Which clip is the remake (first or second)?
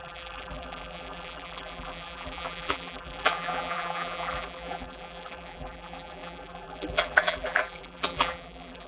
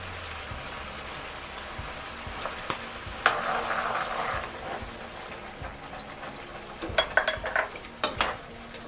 first